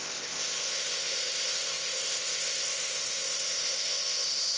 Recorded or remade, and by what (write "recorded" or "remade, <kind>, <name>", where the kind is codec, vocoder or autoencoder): remade, codec, ZipCodec